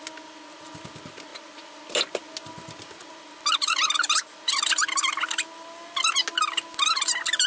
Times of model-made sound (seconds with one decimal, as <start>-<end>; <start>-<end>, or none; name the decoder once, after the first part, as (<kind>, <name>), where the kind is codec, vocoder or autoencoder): none